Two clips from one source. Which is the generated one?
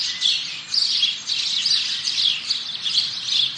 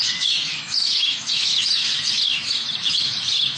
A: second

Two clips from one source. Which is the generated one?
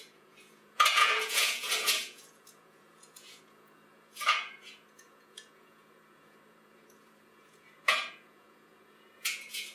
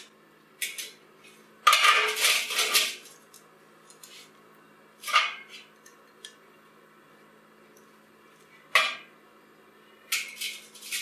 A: first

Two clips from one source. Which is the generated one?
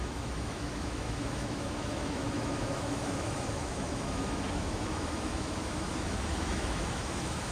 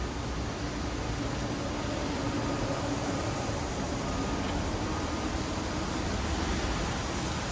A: first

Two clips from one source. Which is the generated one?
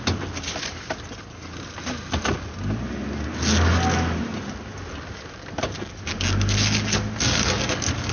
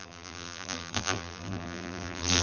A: second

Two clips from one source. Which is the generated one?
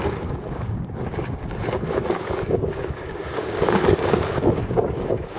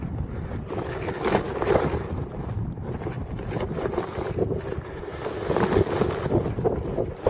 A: first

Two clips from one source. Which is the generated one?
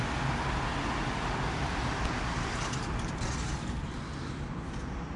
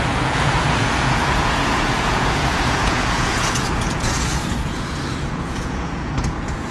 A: second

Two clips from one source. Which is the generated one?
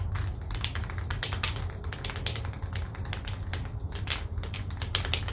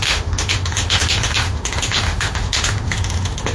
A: second